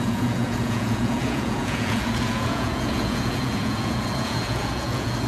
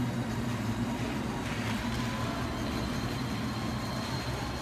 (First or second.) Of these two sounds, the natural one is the second